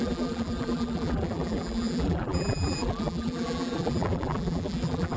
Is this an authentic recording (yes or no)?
no